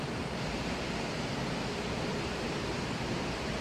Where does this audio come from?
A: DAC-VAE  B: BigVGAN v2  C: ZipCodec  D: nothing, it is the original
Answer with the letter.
B